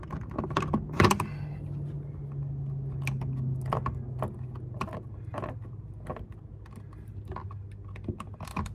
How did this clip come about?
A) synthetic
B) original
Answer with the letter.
B